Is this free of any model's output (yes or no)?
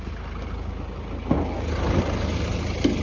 yes